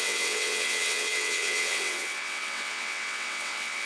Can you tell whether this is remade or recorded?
remade